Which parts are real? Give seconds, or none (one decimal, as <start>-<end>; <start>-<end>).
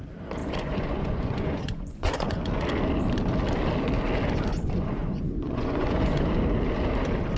0.0-0.4; 2.5-4.5; 6.3-7.4